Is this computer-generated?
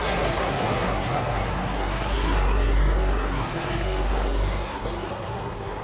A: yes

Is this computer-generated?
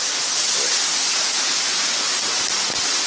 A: no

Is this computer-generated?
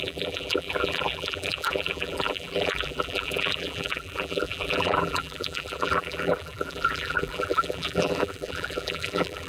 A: yes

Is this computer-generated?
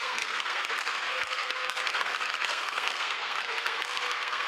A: yes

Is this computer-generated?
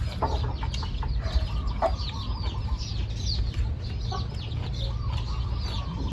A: no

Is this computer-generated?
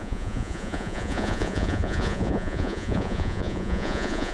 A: yes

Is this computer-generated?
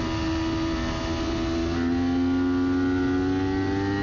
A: no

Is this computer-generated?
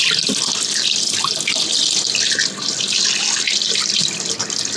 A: no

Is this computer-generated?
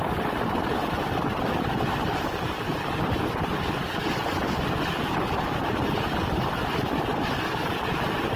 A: no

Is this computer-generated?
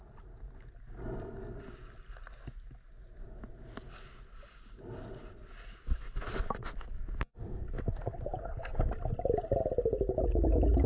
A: no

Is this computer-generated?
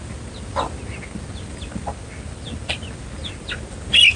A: no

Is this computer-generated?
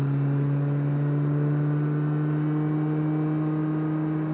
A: no